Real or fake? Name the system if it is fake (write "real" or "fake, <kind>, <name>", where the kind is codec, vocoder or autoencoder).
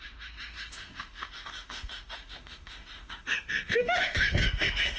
fake, autoencoder, DAC-VAE